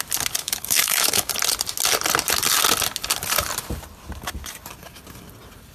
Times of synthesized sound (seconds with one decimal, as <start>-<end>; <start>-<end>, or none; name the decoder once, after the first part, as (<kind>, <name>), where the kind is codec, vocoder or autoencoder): 0.4-1.3 (autoencoder, DAC-VAE)